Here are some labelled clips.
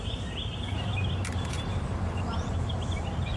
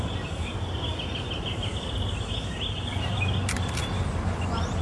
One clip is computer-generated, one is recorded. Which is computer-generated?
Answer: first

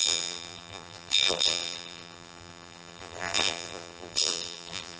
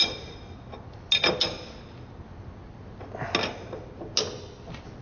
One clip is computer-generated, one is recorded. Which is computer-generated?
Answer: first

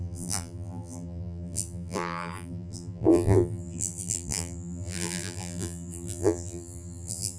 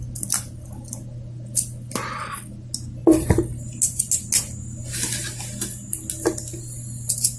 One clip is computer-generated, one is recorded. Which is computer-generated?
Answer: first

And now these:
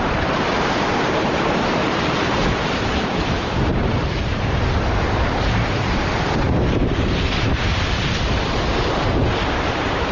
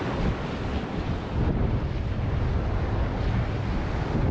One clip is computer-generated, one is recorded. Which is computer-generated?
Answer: first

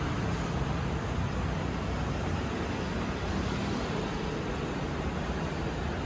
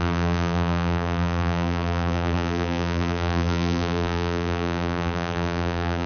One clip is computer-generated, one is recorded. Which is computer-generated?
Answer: second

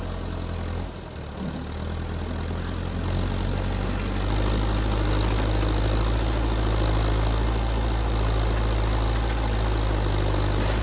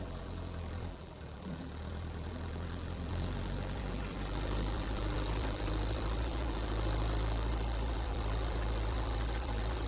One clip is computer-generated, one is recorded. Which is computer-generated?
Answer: second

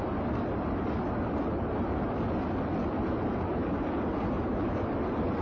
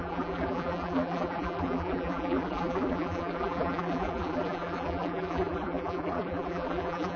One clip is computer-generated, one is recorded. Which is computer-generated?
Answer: second